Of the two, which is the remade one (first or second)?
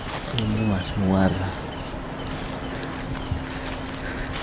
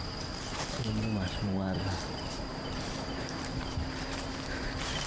second